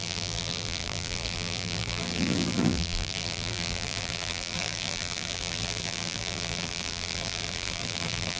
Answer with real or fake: fake